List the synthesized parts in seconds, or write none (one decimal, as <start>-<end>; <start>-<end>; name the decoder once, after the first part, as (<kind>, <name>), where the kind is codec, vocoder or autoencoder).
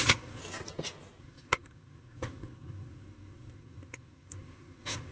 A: 0.0-0.4 (codec, SNAC); 1.2-5.1